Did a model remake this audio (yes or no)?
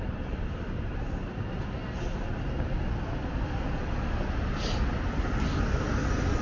no